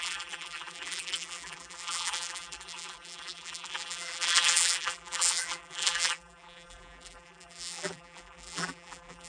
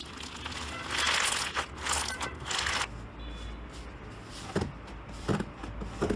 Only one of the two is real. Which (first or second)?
second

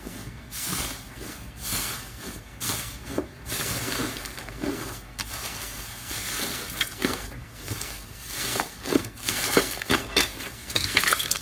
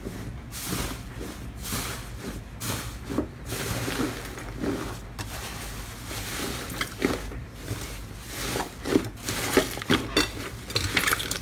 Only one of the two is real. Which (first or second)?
second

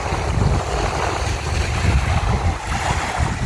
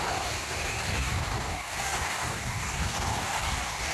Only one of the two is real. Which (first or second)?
first